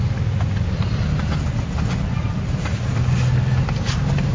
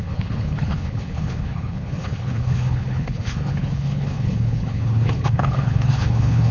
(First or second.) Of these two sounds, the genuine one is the first